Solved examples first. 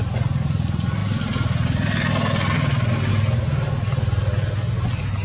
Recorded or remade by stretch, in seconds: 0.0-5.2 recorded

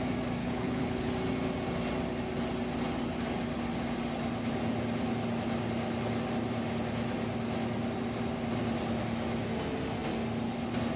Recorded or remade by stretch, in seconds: 0.0-0.4 recorded; 0.4-1.1 remade; 1.1-11.0 recorded

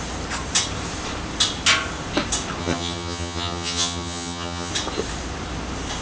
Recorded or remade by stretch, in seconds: 0.0-2.6 recorded; 2.6-4.7 remade; 4.7-6.0 recorded

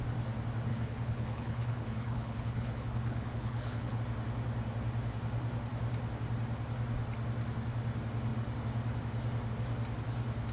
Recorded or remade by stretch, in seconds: 0.0-0.7 recorded; 0.7-4.0 remade; 4.0-10.5 recorded

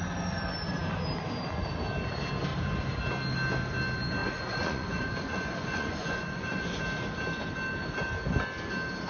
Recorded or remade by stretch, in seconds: 0.0-4.2 recorded; 4.2-6.8 remade; 6.8-9.1 recorded

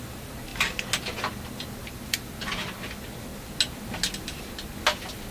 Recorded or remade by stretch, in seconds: 0.0-5.3 recorded

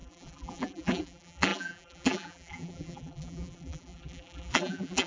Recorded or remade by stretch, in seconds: 0.0-5.1 remade

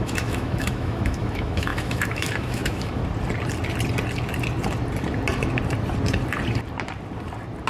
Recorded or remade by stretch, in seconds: 0.0-3.0 remade; 3.0-7.7 recorded